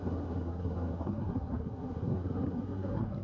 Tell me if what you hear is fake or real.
fake